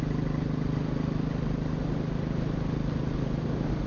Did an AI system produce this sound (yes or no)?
no